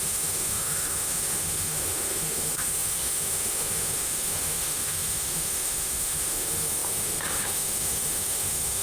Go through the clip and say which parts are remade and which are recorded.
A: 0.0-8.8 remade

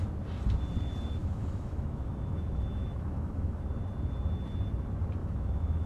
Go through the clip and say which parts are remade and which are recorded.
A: 0.0-1.2 recorded; 1.2-3.6 remade; 3.6-5.2 recorded; 5.2-5.9 remade

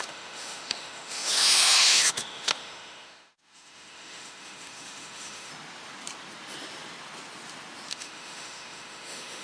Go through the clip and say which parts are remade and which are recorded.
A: 0.0-5.5 remade; 5.5-7.9 recorded; 7.9-9.4 remade